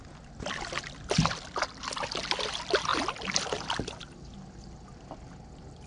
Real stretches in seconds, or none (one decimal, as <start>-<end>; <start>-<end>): 0.0-5.9